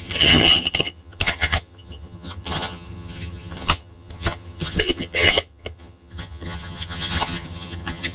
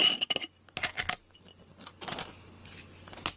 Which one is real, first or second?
second